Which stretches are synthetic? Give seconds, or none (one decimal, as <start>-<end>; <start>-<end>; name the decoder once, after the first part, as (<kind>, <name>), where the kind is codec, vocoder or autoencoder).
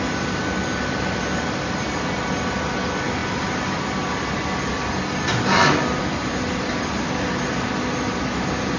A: none